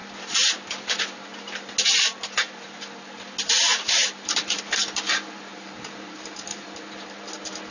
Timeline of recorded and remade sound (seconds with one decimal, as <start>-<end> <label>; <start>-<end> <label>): 0.0-3.7 recorded; 3.7-4.6 remade; 4.6-5.5 recorded; 5.5-6.8 remade; 6.8-7.7 recorded